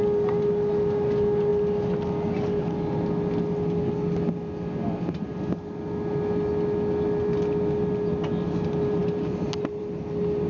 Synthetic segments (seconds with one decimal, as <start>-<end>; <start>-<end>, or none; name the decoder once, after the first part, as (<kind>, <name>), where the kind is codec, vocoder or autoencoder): none